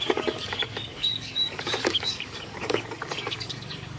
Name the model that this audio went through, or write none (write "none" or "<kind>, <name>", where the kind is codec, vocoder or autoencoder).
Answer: codec, DAC